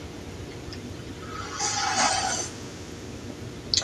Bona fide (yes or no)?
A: yes